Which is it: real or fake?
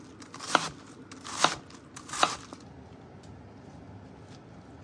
real